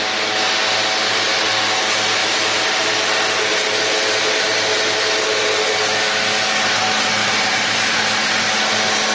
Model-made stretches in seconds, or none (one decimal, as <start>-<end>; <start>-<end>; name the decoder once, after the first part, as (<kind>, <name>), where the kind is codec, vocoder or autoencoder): 7.2-8.4 (vocoder, BigVGAN v2)

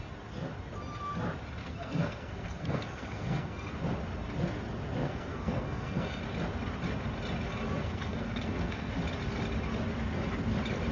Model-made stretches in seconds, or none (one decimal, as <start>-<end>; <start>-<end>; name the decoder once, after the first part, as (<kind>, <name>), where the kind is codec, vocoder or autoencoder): 1.6-3.8 (codec, SNAC); 5.0-6.2; 7.8-8.9